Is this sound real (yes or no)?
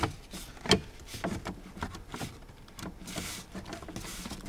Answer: yes